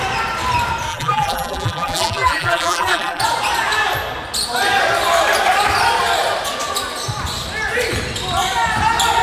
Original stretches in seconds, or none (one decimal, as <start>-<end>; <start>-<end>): 0.0-0.9; 3.2-9.2